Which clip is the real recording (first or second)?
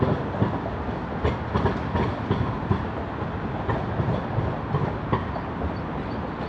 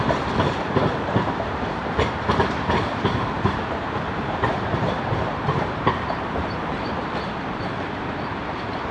first